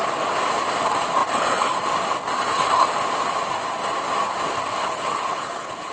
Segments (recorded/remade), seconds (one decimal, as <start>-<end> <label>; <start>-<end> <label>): 0.0-4.8 recorded; 4.8-5.9 remade